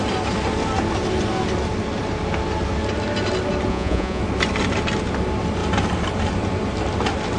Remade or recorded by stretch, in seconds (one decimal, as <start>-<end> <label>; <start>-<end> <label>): 0.0-3.7 recorded; 3.7-4.2 remade; 4.2-7.4 recorded